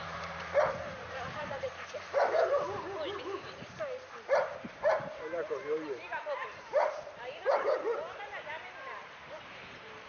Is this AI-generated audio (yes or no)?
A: yes